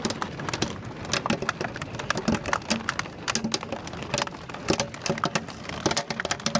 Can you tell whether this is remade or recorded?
recorded